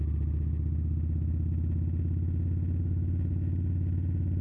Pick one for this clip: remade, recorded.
recorded